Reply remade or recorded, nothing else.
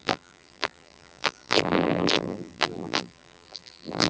remade